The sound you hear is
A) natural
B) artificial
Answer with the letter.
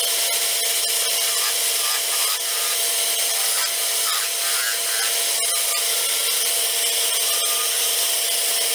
A